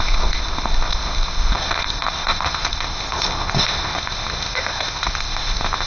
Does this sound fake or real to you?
fake